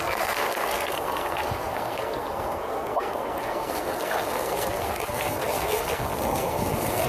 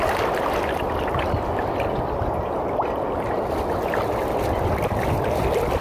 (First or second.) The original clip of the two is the second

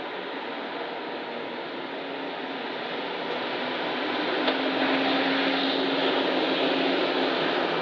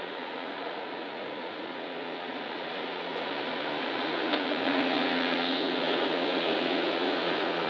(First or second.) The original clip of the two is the first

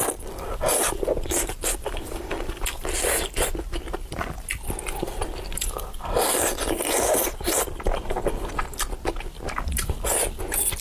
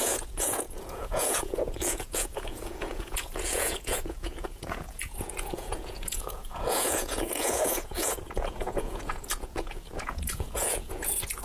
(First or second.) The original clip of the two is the first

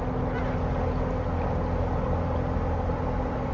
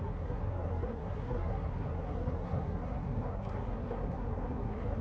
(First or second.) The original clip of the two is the first